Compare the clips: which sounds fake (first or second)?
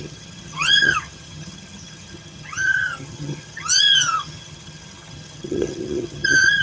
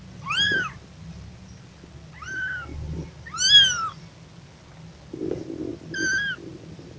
first